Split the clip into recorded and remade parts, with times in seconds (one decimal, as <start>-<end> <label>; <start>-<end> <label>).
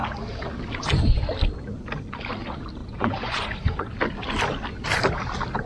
0.0-2.8 recorded; 2.8-3.9 remade; 3.9-5.7 recorded